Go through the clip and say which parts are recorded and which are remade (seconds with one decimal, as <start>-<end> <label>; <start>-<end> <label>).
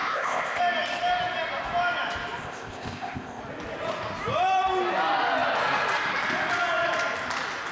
0.0-0.6 remade; 0.6-2.4 recorded; 2.4-3.4 remade; 3.4-7.7 recorded